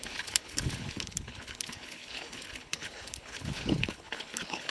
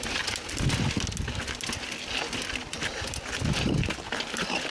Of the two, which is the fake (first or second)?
first